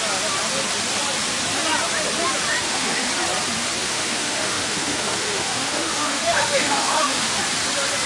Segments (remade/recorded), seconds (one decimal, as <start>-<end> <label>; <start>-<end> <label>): 0.0-2.5 recorded; 2.5-3.1 remade; 3.1-3.8 recorded; 3.8-7.4 remade; 7.4-8.1 recorded